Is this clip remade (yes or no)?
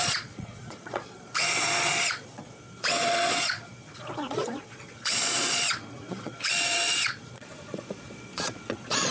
yes